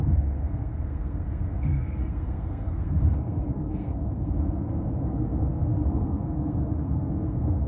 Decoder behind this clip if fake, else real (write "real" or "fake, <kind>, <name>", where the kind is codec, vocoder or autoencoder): fake, codec, SNAC